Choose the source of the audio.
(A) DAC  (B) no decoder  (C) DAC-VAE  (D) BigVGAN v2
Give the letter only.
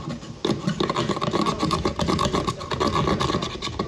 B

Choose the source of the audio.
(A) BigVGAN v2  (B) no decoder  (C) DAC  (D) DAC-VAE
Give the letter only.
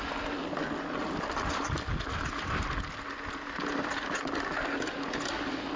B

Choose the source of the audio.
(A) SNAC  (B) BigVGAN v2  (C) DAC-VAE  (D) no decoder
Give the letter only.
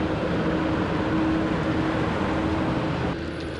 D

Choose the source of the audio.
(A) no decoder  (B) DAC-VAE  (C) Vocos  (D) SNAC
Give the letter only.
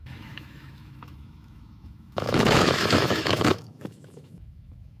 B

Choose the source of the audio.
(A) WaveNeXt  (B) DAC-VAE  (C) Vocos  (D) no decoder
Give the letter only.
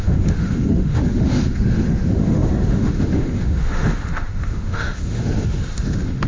B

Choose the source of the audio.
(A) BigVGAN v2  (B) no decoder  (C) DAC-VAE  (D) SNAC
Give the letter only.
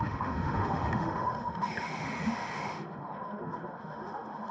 C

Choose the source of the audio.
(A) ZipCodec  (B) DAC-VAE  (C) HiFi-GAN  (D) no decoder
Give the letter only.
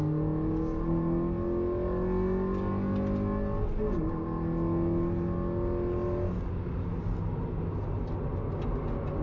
D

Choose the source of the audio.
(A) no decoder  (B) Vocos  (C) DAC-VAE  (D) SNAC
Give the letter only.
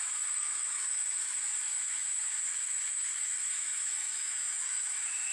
C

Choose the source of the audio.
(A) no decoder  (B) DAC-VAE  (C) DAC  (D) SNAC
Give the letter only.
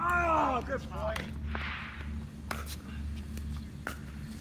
A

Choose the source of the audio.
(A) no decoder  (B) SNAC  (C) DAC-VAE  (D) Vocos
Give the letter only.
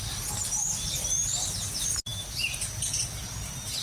A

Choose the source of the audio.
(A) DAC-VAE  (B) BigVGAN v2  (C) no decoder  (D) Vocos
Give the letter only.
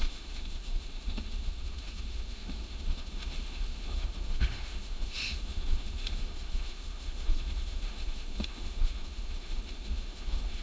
A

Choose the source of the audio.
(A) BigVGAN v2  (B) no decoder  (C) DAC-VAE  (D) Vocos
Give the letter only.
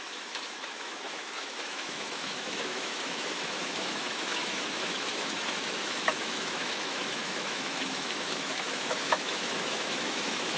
C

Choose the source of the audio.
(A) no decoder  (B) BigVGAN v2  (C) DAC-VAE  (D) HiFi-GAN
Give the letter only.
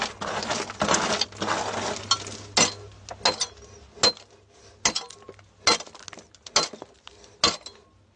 A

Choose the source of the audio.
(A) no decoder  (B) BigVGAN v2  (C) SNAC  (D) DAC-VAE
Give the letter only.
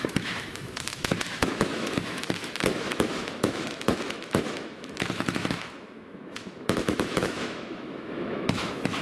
D